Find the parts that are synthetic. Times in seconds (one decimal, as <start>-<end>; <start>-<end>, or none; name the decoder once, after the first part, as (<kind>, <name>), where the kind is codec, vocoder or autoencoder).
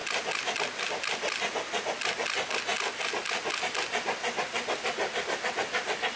none